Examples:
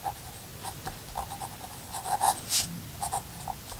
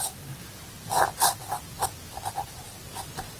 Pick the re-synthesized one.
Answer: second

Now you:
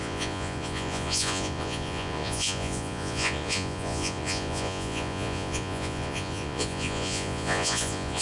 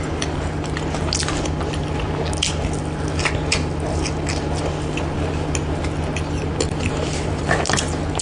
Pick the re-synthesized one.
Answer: first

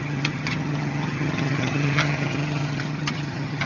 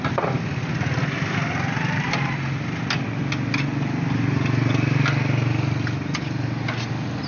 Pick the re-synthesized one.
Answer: first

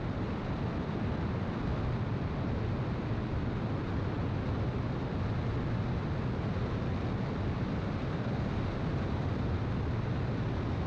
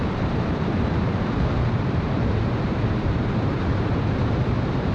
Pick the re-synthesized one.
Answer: second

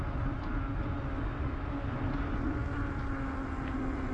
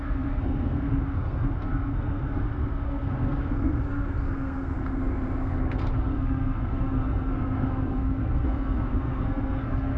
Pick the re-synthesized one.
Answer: second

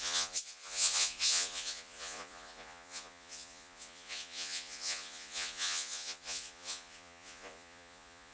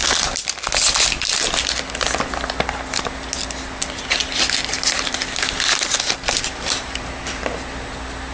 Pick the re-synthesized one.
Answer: first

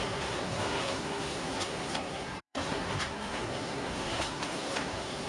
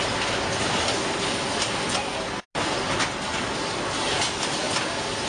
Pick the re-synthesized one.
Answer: first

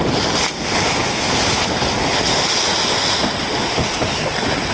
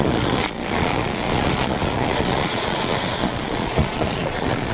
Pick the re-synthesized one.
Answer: second